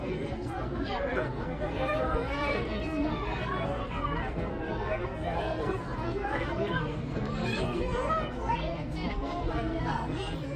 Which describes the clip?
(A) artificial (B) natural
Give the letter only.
A